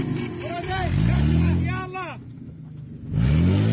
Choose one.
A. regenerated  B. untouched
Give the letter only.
B